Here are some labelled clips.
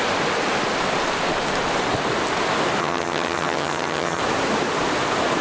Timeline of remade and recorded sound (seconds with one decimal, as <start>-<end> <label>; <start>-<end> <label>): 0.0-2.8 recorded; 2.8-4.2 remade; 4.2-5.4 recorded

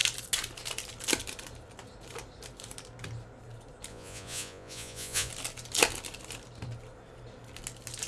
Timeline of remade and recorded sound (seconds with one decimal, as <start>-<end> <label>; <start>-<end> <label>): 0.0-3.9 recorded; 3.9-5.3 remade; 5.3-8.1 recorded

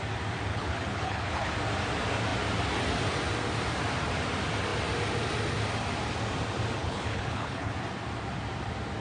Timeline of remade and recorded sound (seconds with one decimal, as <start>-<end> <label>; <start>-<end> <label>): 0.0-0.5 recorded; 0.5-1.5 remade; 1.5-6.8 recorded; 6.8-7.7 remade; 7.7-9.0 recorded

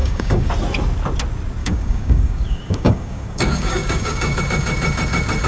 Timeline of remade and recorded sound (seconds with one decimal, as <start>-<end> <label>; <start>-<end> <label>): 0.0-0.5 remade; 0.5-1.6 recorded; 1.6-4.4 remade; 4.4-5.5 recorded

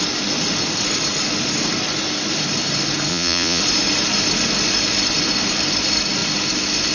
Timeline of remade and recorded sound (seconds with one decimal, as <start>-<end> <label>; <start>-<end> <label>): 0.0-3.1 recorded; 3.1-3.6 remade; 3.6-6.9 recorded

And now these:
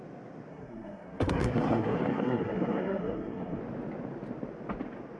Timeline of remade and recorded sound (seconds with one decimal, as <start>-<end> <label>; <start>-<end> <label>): 0.0-0.5 recorded; 0.5-3.6 remade; 3.6-5.2 recorded

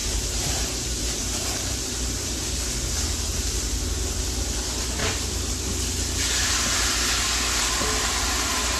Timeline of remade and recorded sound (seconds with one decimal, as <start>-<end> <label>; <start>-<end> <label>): 0.0-1.9 remade; 1.9-5.0 recorded; 5.0-6.5 remade; 6.5-8.8 recorded

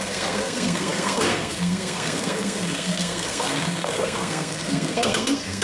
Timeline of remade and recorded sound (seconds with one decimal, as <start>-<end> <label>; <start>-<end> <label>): 0.0-5.6 remade